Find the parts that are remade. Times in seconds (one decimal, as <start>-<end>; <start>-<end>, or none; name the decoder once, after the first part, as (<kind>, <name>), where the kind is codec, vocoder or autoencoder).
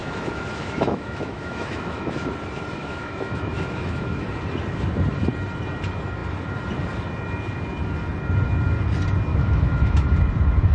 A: 0.0-2.3 (autoencoder, DAC-VAE); 2.8-4.3; 9.3-10.1